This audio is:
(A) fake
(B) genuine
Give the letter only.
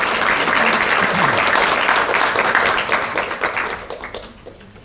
B